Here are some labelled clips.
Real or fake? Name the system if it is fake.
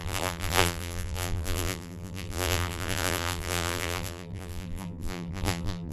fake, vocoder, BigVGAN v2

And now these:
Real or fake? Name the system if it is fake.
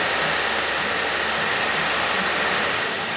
real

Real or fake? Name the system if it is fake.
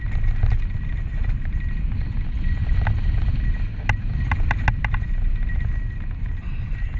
real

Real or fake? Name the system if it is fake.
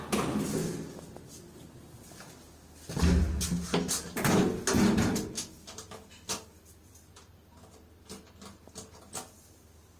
real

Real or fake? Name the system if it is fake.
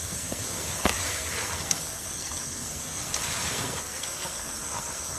fake, codec, SNAC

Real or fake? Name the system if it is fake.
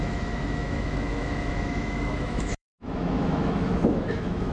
fake, autoencoder, DAC-VAE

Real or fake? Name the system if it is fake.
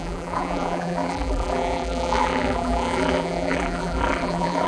fake, vocoder, BigVGAN v2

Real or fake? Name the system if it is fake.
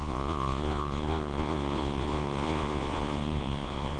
fake, vocoder, Vocos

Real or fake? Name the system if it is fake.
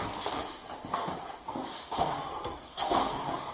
fake, codec, SNAC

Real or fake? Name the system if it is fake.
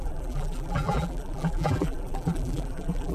fake, vocoder, BigVGAN v2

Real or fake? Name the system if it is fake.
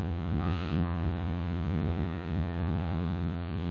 fake, vocoder, Vocos